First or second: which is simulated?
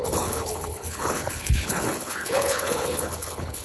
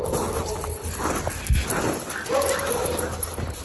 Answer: first